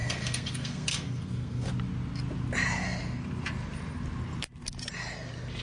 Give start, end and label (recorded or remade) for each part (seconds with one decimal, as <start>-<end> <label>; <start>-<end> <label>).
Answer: 0.0-1.7 remade; 1.7-5.6 recorded